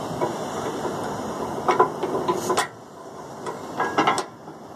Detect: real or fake real